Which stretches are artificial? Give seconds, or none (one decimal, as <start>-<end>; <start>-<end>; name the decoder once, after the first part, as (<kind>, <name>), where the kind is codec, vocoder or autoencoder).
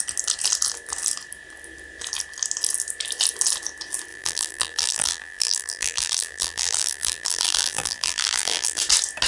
4.1-8.8 (vocoder, BigVGAN v2)